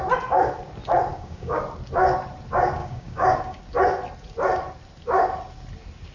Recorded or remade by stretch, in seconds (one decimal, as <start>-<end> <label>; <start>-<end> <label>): 0.0-1.1 recorded; 1.1-1.6 remade; 1.6-2.8 recorded; 2.8-3.6 remade; 3.6-6.1 recorded